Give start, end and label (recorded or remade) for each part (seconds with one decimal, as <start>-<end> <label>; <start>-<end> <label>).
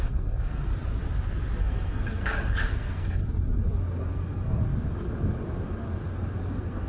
0.0-0.7 remade; 0.7-1.6 recorded; 1.6-3.2 remade; 3.2-4.0 recorded; 4.0-4.6 remade; 4.6-6.5 recorded; 6.5-6.9 remade